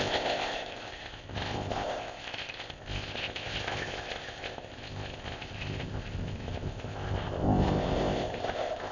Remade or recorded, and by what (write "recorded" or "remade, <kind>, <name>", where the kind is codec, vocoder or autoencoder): remade, codec, ZipCodec